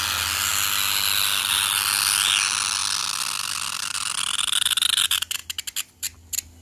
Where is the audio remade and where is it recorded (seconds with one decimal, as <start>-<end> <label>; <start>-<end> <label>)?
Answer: 0.0-6.6 recorded